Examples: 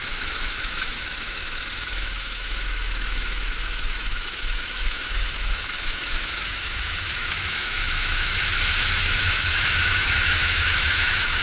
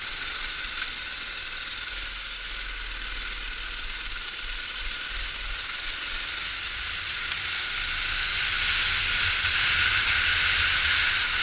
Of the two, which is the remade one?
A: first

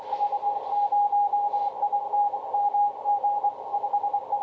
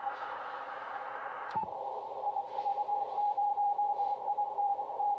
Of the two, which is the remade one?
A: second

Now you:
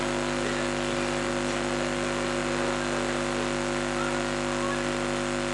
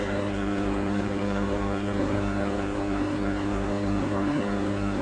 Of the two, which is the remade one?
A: second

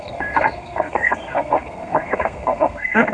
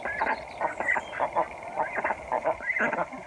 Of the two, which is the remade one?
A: first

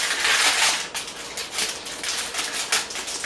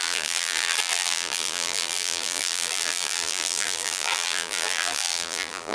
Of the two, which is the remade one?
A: second